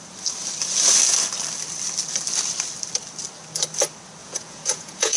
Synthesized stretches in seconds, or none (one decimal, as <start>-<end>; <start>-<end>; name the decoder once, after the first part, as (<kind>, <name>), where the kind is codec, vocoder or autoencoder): 4.2-5.2 (vocoder, Vocos)